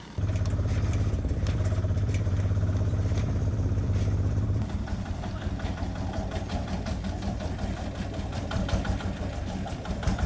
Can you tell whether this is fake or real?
fake